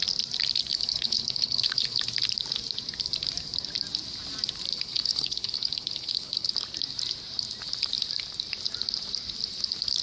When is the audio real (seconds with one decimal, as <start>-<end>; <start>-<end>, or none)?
0.0-0.7; 2.0-4.7; 6.5-10.0